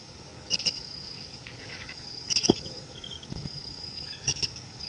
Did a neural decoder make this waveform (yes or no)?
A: yes